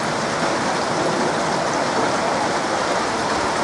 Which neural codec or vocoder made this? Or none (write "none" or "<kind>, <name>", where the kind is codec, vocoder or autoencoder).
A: none